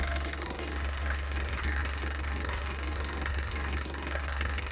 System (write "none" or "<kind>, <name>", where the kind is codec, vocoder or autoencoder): codec, SNAC